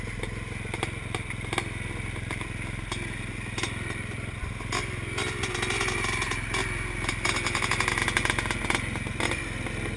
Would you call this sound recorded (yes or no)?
yes